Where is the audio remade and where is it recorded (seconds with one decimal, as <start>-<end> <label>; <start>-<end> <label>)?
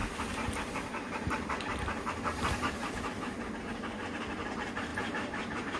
0.0-3.1 remade; 3.1-4.9 recorded; 4.9-5.8 remade